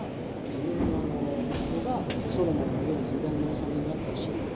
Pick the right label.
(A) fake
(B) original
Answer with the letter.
B